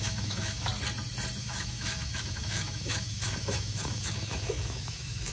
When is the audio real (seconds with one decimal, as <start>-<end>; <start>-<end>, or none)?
0.7-1.4